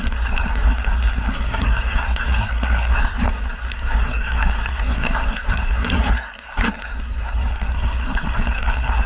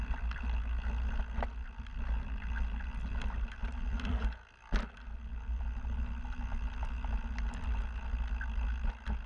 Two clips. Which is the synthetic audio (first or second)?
first